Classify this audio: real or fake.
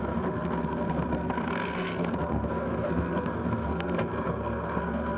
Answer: fake